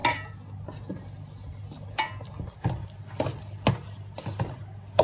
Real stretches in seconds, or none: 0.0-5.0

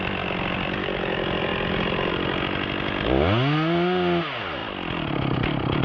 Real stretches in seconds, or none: 0.0-5.8

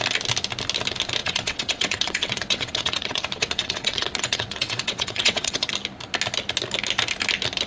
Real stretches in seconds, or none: 0.0-1.2; 5.7-7.7

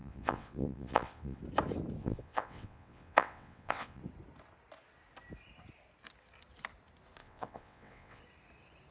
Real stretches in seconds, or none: 1.4-2.0; 4.0-7.2; 8.2-8.9

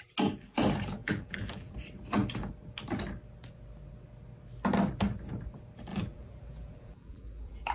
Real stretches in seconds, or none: 0.0-1.0; 1.7-5.9

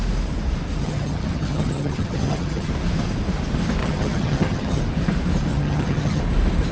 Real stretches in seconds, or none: 0.0-0.8; 2.7-3.8; 4.8-5.5; 6.2-6.7

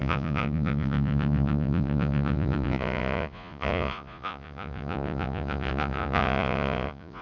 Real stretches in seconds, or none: none